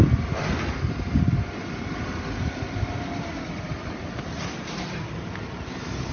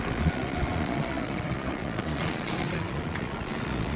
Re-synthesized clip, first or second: second